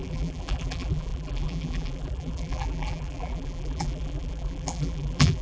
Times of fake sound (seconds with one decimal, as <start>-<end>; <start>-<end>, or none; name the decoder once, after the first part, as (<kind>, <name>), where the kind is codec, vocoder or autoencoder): 0.0-5.4 (vocoder, BigVGAN v2)

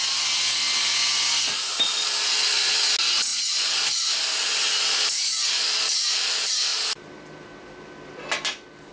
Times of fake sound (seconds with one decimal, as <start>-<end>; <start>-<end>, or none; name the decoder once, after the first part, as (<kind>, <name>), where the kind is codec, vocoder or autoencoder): 1.1-2.3 (vocoder, BigVGAN v2)

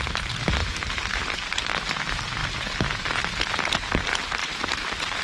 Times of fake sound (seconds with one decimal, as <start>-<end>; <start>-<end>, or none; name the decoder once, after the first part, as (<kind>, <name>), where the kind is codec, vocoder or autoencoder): 0.6-1.3 (vocoder, BigVGAN v2); 4.4-5.2

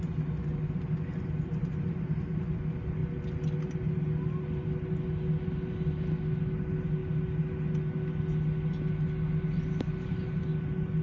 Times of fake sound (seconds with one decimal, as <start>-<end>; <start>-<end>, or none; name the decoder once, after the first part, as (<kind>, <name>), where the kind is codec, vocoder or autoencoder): none

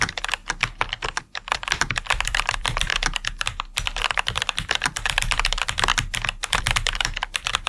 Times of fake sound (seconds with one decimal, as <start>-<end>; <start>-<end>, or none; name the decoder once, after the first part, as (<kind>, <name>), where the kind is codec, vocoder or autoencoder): 0.0-0.4 (vocoder, BigVGAN v2); 1.2-2.9; 4.1-5.9; 6.6-7.7